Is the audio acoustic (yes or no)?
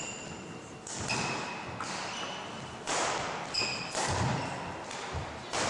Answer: yes